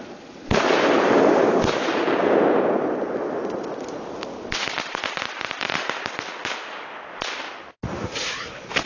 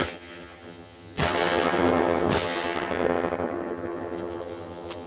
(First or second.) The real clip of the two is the first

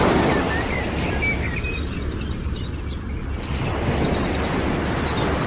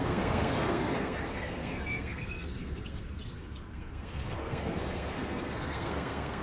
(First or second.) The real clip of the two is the first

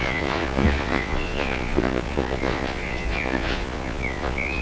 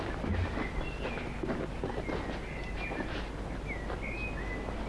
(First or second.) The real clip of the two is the second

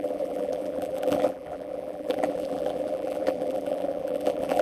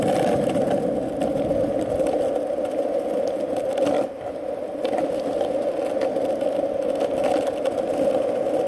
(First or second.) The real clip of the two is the second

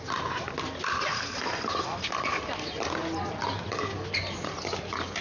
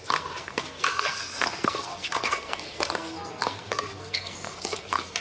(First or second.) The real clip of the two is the first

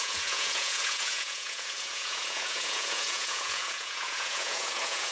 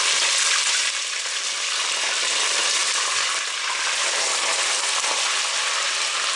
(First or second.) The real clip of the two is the second